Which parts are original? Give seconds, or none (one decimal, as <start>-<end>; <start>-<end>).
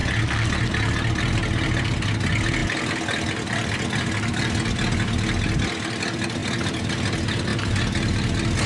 0.0-8.7